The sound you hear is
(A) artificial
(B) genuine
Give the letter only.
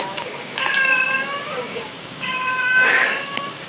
A